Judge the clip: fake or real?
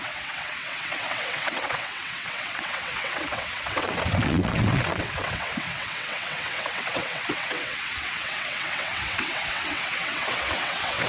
fake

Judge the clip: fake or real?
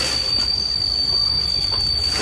real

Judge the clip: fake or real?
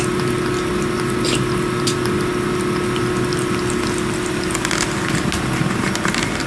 real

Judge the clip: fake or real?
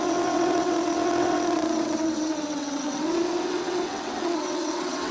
fake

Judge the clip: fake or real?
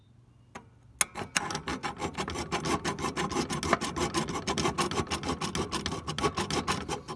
real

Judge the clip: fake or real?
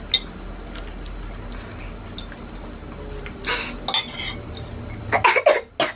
real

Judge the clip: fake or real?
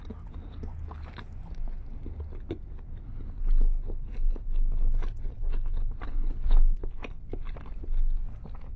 real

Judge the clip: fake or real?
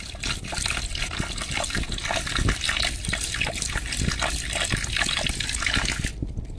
real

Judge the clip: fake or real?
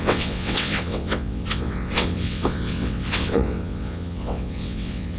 fake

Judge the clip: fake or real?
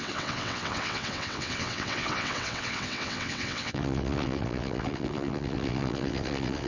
fake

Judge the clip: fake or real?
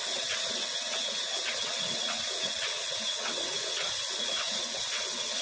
fake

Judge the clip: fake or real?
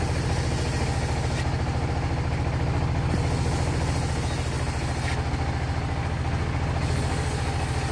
real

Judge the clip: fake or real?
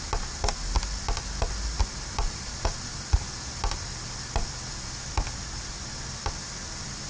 real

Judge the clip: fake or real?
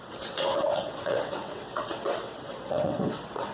fake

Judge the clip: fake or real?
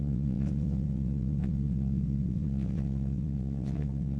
fake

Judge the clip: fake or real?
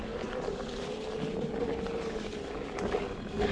real